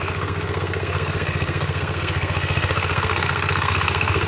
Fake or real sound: fake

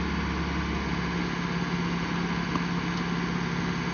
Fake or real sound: real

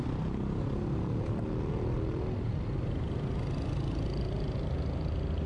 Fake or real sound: real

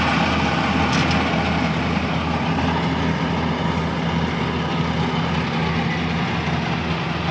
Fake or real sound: real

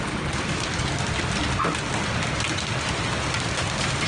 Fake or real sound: real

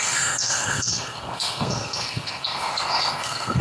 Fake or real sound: fake